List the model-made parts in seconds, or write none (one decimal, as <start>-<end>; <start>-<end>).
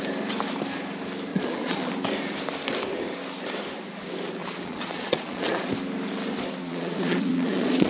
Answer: 1.3-1.9; 4.4-5.7; 6.6-7.9